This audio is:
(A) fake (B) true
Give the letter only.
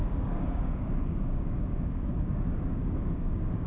A